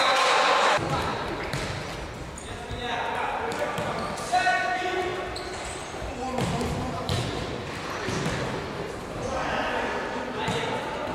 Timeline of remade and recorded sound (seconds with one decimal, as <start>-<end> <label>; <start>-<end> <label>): 0.0-11.1 recorded